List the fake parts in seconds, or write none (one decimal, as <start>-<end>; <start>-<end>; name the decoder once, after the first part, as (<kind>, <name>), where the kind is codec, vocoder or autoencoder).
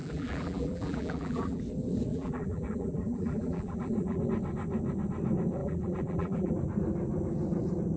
0.0-1.6 (vocoder, BigVGAN v2); 2.1-4.2; 5.6-6.5